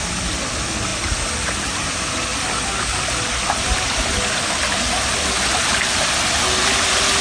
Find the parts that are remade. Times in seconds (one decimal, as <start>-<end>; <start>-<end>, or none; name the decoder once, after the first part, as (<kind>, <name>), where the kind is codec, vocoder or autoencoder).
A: none